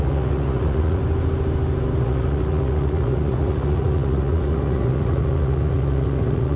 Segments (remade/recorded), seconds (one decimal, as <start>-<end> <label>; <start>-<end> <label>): 0.0-1.0 remade; 1.0-2.0 recorded; 2.0-6.6 remade